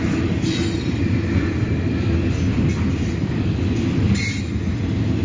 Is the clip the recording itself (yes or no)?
yes